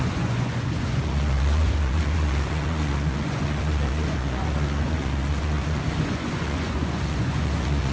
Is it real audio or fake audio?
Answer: fake